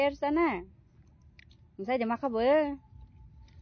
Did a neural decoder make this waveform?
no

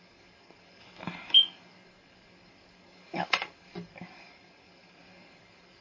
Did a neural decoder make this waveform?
yes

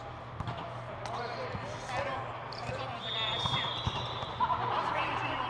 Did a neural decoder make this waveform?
no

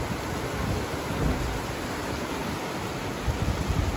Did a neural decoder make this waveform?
no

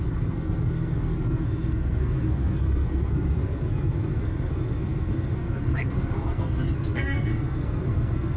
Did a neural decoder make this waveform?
yes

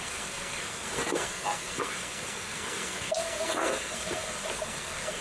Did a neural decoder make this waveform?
yes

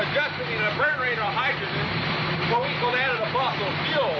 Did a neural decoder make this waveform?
no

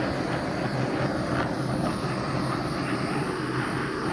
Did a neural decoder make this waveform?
no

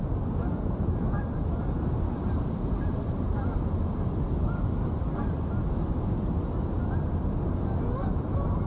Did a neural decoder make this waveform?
no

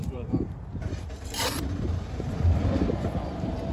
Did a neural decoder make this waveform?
yes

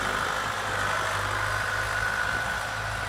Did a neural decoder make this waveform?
no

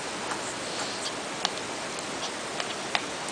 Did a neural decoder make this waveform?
no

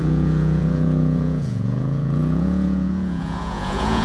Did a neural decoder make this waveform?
yes